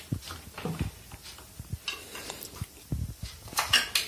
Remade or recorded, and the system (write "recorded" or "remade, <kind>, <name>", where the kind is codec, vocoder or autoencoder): recorded